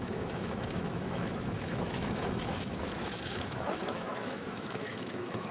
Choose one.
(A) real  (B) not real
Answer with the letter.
B